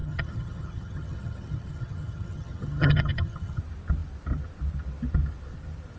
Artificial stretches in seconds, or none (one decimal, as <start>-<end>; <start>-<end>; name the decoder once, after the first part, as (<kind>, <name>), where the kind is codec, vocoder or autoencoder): 0.0-3.6 (vocoder, HiFi-GAN)